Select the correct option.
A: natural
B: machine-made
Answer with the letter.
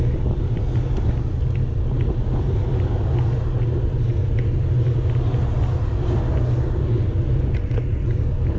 A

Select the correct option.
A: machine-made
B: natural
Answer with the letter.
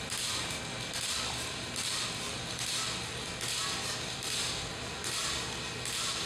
B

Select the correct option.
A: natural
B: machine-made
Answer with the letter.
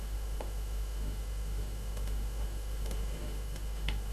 B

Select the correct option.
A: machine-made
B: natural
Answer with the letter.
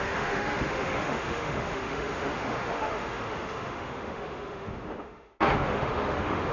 A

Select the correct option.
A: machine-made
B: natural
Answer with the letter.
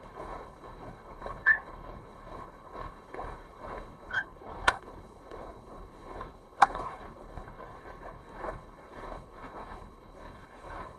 A